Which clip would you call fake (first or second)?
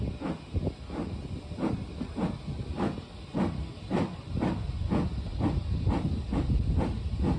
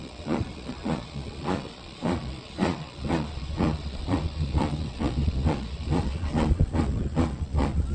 second